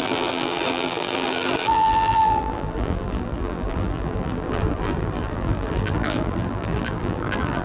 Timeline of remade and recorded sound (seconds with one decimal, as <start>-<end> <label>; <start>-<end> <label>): 0.0-7.6 remade